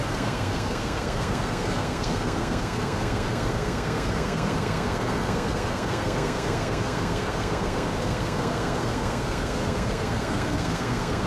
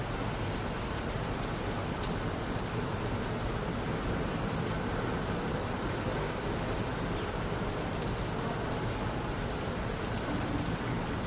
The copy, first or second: first